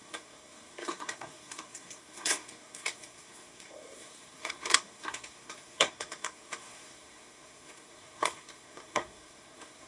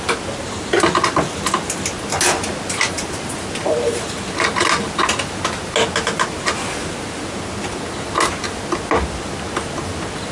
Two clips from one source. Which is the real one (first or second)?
second